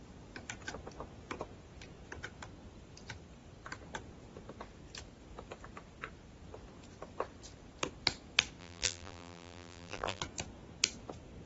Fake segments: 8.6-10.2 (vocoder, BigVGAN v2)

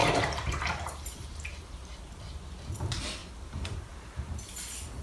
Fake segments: 0.0-2.0 (vocoder, BigVGAN v2); 3.2-4.4

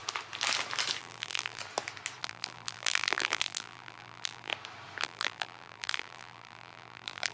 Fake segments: 1.0-1.6 (vocoder, BigVGAN v2); 2.2-4.5; 5.0-7.3

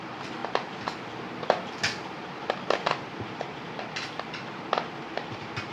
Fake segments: none

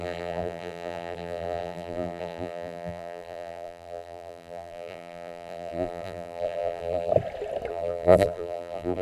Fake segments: 0.0-7.1 (vocoder, BigVGAN v2); 7.7-9.0